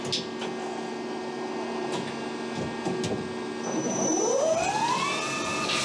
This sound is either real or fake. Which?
real